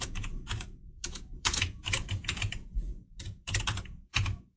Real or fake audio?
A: fake